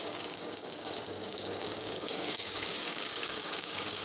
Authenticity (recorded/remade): remade